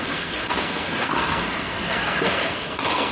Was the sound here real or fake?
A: fake